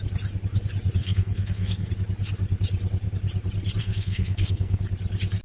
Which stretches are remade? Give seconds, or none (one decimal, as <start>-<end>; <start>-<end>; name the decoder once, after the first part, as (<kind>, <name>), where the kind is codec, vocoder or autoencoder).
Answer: 1.0-1.9 (codec, SNAC); 3.8-4.8